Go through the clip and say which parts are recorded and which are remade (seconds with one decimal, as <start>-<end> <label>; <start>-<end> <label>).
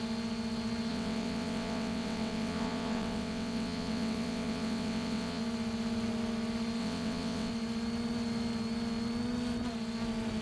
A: 0.0-0.9 recorded; 0.9-5.4 remade; 5.4-6.8 recorded; 6.8-7.5 remade; 7.5-10.4 recorded